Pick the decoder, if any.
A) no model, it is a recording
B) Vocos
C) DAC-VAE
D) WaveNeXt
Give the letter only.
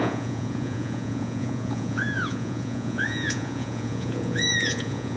B